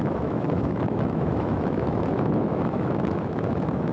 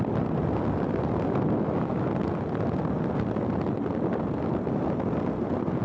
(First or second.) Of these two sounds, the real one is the second